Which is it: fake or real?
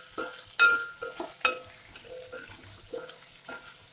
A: real